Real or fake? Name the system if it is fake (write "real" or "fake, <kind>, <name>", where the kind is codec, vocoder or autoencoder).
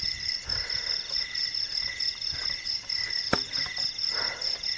real